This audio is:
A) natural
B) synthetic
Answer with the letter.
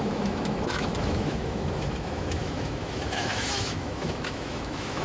B